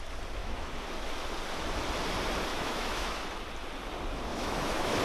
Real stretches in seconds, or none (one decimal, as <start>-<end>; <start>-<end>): 0.0-0.4; 0.9-2.5; 3.2-4.3